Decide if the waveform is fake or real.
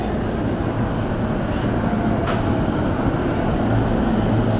real